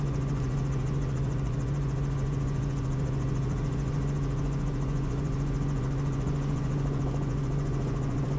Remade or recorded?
remade